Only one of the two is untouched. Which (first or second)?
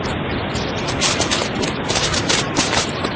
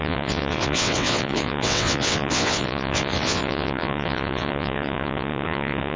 first